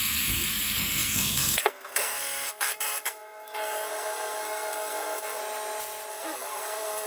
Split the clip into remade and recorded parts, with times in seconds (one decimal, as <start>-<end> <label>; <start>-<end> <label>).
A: 0.0-5.4 remade; 5.4-6.1 recorded; 6.1-7.1 remade